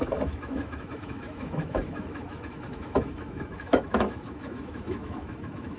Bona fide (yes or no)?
no